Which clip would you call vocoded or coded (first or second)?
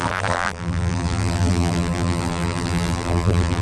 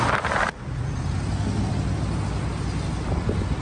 first